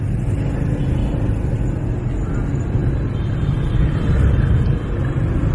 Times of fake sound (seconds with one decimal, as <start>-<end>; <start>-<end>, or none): 1.0-1.5